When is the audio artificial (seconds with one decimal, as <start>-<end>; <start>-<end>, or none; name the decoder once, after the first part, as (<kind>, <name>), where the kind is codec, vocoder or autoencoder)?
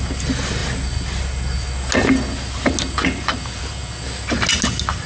none